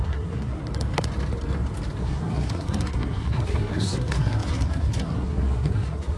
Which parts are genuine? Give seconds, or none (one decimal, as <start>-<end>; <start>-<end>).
0.6-2.0